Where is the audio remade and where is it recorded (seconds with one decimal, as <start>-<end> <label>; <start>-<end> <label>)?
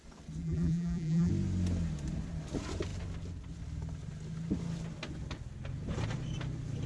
0.0-0.4 recorded; 0.4-1.3 remade; 1.3-6.9 recorded